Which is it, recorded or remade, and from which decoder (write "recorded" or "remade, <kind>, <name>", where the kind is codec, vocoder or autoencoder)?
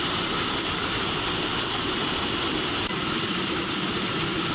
recorded